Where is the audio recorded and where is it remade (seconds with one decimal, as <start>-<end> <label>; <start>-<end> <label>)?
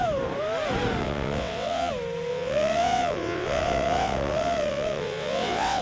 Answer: 0.0-1.0 recorded; 1.0-1.9 remade; 1.9-2.3 recorded; 2.3-5.8 remade